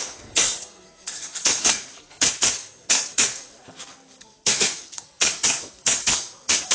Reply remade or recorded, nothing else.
remade